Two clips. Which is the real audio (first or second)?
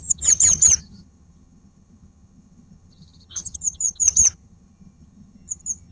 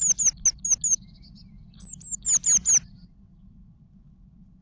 second